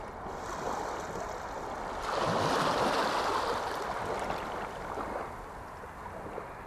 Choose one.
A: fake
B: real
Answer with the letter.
B